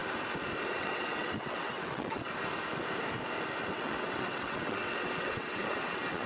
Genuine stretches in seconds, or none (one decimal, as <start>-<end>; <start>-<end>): 0.0-0.7; 2.3-3.7